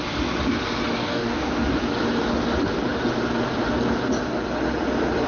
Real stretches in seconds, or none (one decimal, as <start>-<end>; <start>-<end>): 0.0-1.0; 1.5-5.3